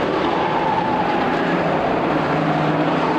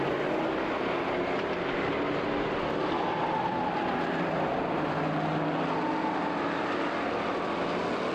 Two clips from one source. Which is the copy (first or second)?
first